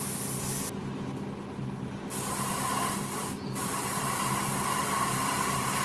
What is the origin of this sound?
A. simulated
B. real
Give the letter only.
B